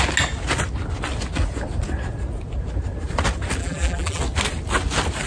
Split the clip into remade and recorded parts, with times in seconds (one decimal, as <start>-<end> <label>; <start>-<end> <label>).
0.0-3.6 recorded; 3.6-4.2 remade; 4.2-5.3 recorded

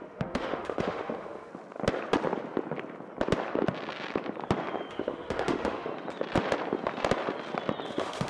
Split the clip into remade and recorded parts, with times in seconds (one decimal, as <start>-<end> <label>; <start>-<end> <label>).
0.0-1.5 remade; 1.5-4.9 recorded; 4.9-5.9 remade; 5.9-7.9 recorded; 7.9-8.3 remade

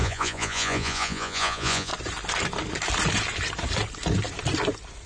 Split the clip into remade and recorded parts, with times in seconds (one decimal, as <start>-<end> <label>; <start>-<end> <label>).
0.0-1.9 remade; 1.9-5.1 recorded

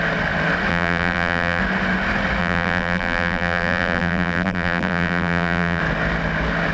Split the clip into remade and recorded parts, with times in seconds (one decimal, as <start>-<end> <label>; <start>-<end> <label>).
0.0-0.7 recorded; 0.7-1.6 remade; 1.6-2.4 recorded; 2.4-5.8 remade; 5.8-6.7 recorded